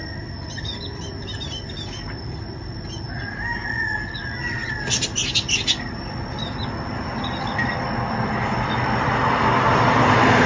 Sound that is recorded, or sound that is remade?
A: recorded